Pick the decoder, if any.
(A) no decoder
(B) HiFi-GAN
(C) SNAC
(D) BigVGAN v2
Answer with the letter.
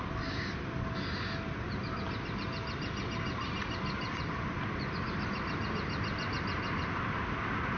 A